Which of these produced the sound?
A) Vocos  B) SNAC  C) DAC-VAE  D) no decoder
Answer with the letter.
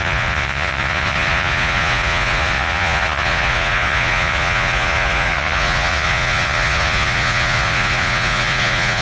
A